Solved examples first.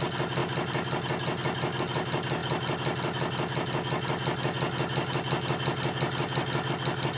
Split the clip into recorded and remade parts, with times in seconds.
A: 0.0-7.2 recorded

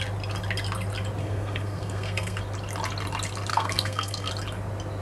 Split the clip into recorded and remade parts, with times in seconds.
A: 0.0-1.2 recorded; 1.2-2.4 remade; 2.4-3.5 recorded; 3.5-4.3 remade; 4.3-5.0 recorded

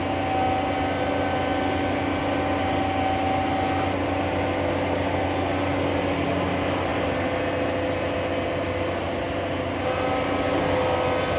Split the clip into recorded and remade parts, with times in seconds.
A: 0.0-11.4 recorded

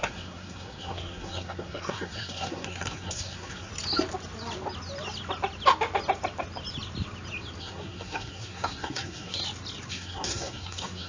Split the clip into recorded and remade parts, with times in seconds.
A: 0.0-3.7 remade; 3.7-7.6 recorded; 7.6-9.4 remade; 9.4-9.9 recorded; 9.9-11.1 remade